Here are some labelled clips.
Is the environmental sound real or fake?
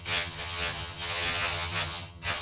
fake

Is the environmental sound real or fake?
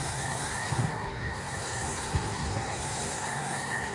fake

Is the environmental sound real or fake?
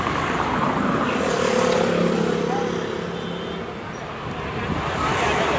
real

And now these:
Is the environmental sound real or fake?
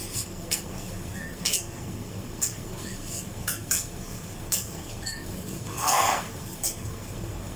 fake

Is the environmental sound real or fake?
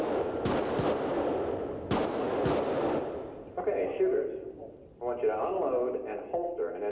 real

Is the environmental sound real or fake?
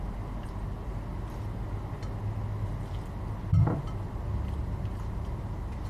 real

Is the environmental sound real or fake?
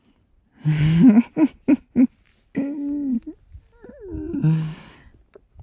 real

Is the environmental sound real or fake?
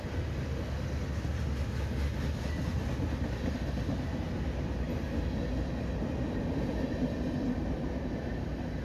real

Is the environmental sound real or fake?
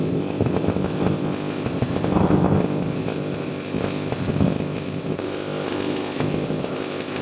fake